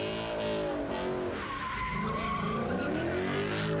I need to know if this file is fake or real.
real